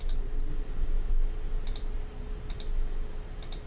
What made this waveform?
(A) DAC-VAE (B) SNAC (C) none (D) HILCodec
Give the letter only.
C